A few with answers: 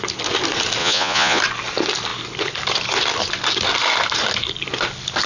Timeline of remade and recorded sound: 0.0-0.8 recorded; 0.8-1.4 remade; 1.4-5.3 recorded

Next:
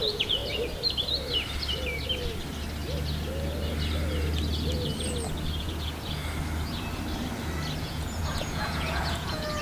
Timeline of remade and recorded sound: 0.0-0.4 remade; 0.4-5.6 recorded; 5.6-6.2 remade; 6.2-7.8 recorded; 7.8-9.6 remade

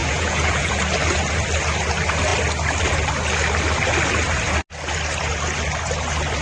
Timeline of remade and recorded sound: 0.0-0.8 remade; 0.8-6.4 recorded

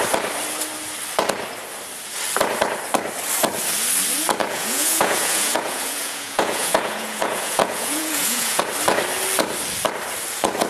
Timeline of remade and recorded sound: 0.0-4.4 recorded; 4.4-8.6 remade; 8.6-10.7 recorded

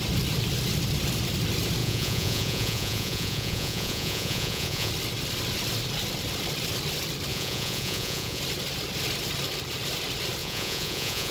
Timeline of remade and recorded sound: 0.0-1.8 recorded; 1.8-4.9 remade; 4.9-7.3 recorded; 7.3-8.4 remade; 8.4-10.4 recorded; 10.4-11.3 remade

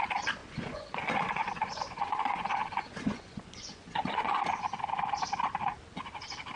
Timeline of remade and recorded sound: 0.0-0.4 recorded; 0.4-4.4 remade; 4.4-6.6 recorded

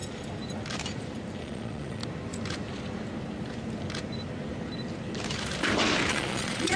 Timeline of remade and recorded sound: 0.0-1.4 recorded; 1.4-2.0 remade; 2.0-6.1 recorded; 6.1-6.8 remade